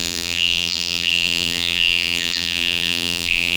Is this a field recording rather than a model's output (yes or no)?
no